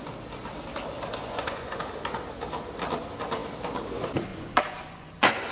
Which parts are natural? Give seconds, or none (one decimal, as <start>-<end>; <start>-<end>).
0.0-1.2; 1.8-4.3